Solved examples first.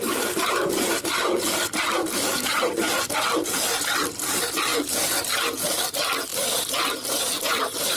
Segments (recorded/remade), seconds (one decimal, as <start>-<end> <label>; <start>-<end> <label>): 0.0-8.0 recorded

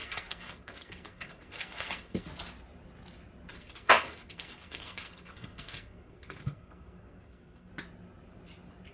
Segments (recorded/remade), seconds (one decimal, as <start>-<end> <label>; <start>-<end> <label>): 0.0-2.3 remade; 2.3-3.5 recorded; 3.5-7.7 remade; 7.7-8.9 recorded

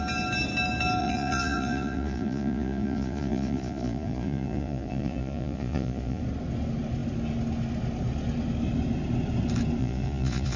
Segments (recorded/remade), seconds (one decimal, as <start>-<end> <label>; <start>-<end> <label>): 0.0-1.0 recorded; 1.0-6.2 remade; 6.2-9.8 recorded; 9.8-10.6 remade